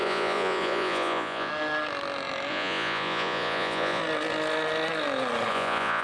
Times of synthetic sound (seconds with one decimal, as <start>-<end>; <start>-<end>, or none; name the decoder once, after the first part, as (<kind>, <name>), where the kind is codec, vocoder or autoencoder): 0.0-1.5 (vocoder, Vocos); 2.5-4.0; 5.5-6.0